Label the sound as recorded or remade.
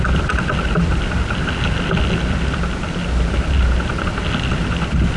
recorded